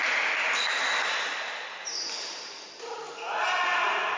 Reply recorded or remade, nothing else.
recorded